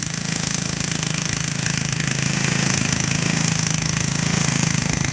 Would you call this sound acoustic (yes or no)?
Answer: no